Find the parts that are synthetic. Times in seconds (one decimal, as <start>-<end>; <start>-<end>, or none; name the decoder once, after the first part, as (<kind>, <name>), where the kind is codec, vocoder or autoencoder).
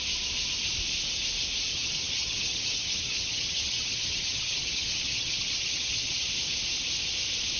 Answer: 1.7-6.3 (vocoder, HiFi-GAN)